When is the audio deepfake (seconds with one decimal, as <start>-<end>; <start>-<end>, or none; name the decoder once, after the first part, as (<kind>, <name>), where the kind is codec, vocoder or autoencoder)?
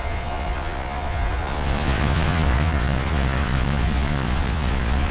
0.0-5.1 (vocoder, Vocos)